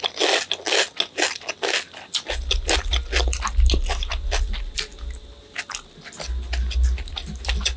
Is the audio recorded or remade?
recorded